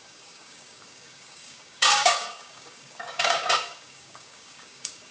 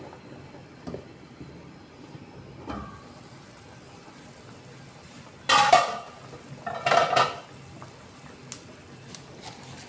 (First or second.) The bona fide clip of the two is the second